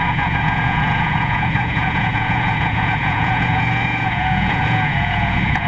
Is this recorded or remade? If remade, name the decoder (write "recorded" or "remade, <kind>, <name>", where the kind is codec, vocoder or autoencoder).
remade, vocoder, Vocos